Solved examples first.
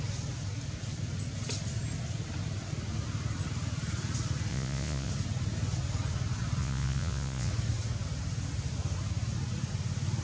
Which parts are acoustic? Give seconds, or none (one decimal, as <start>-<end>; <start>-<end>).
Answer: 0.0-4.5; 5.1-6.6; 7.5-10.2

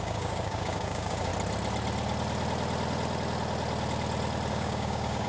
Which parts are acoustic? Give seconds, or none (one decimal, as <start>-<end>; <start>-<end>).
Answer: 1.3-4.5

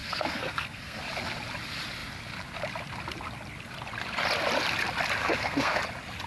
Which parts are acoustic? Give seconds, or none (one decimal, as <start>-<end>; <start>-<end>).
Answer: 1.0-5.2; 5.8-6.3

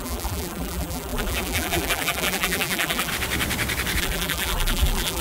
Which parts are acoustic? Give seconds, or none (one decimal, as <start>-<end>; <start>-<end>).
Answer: 3.1-4.0

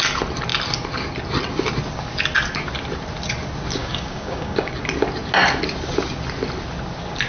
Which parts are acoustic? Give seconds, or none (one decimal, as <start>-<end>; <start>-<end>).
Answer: 0.0-3.8; 4.7-7.3